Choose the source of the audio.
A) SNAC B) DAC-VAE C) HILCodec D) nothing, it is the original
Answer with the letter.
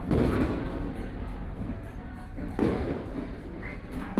A